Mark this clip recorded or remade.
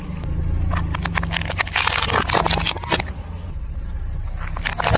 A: recorded